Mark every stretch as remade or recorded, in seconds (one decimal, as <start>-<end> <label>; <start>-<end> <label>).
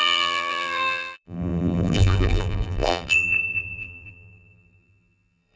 0.0-5.6 remade